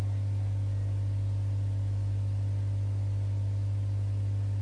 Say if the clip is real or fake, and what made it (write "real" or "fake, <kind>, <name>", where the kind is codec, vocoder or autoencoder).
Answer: real